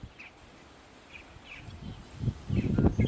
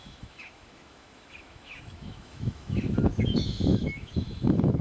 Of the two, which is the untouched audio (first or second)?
first